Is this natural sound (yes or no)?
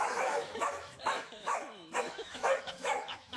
no